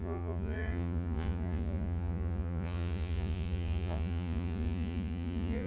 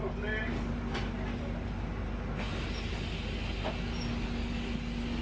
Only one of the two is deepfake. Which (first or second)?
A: first